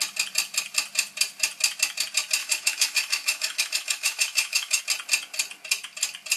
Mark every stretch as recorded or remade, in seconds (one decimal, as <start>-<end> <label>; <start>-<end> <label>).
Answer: 0.0-2.4 recorded; 2.4-4.8 remade; 4.8-6.4 recorded